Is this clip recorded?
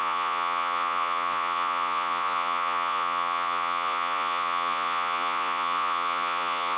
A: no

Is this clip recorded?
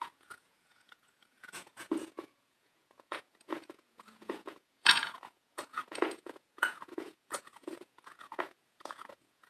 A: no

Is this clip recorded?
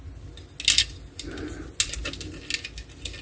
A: yes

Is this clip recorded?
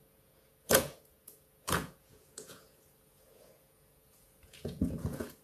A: no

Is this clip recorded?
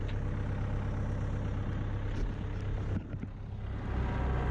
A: yes